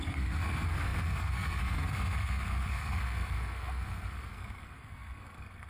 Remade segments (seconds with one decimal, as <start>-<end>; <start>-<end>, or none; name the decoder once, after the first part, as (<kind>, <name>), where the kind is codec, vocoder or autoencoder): 0.0-5.7 (codec, SNAC)